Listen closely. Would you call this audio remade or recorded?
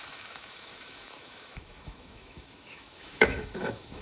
remade